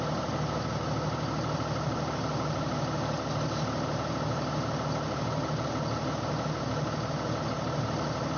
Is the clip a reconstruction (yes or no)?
no